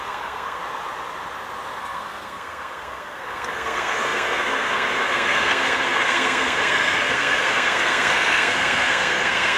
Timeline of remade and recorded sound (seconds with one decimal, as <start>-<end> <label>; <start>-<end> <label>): 0.0-0.6 remade; 0.6-1.8 recorded; 1.8-9.6 remade